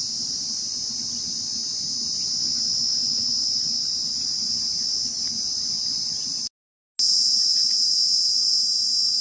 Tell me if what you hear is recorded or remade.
recorded